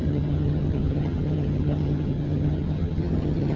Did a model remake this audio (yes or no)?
yes